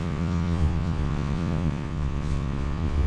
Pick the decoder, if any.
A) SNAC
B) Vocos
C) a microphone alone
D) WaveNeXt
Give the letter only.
B